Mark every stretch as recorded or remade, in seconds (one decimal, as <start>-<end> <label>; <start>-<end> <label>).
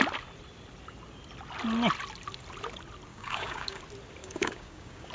0.0-3.1 recorded; 3.1-3.8 remade; 3.8-4.2 recorded; 4.2-5.1 remade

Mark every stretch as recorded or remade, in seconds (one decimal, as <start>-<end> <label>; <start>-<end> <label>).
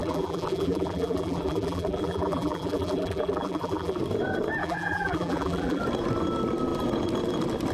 0.0-4.0 remade; 4.0-4.6 recorded; 4.6-5.8 remade; 5.8-7.7 recorded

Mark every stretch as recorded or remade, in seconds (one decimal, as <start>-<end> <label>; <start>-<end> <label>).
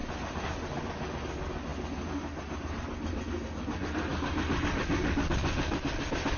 0.0-0.9 remade; 0.9-6.4 recorded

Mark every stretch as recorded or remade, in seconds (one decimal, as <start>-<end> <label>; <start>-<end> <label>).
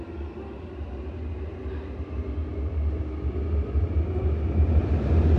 0.0-5.4 recorded